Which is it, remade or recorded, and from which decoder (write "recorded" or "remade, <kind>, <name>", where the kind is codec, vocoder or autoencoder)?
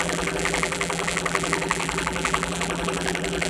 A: remade, vocoder, BigVGAN v2